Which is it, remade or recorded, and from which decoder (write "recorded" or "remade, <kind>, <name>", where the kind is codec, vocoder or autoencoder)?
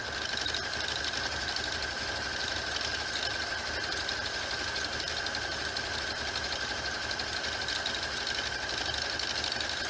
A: recorded